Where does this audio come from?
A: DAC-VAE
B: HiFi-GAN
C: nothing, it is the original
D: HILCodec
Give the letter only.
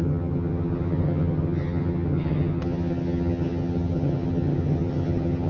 B